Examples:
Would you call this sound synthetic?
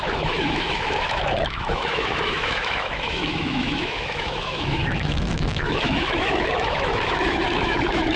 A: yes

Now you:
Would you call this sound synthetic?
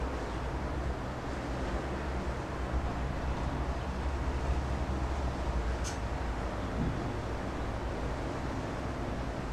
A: no